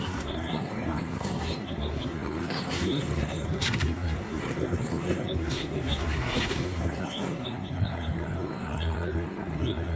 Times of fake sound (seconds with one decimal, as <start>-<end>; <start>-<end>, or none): 0.0-10.0